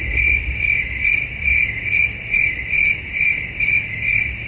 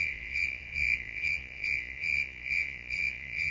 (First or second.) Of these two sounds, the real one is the first